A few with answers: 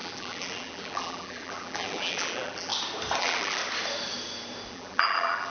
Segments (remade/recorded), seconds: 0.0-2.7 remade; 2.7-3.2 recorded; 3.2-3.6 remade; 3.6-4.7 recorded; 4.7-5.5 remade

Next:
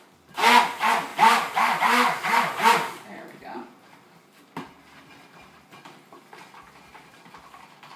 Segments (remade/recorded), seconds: 0.0-1.1 recorded; 1.1-5.6 remade; 5.6-8.0 recorded

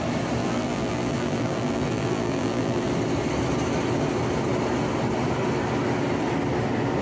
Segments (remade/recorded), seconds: 0.0-0.4 recorded; 0.4-2.9 remade; 2.9-7.0 recorded

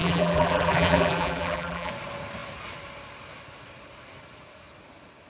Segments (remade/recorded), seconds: 0.0-1.9 remade; 1.9-5.3 recorded